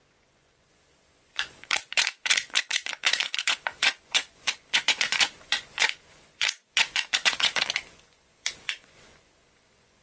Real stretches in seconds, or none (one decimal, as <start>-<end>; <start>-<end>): none

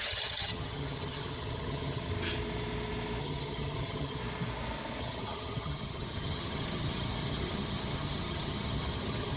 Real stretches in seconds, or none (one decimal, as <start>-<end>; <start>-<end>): 2.1-3.2; 4.2-5.0

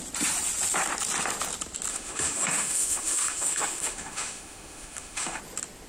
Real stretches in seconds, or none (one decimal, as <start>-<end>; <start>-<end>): 0.0-1.9; 5.4-5.9

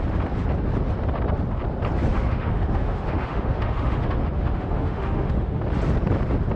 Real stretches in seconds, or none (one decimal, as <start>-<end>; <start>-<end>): 0.0-2.1; 5.6-6.6

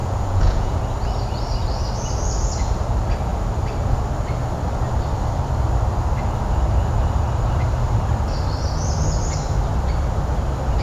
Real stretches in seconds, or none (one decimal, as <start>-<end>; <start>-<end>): 0.8-10.8

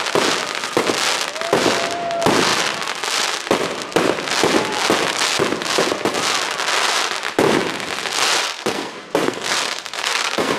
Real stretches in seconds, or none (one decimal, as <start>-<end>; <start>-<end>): 0.0-8.4